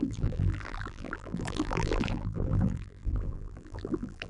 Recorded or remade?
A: remade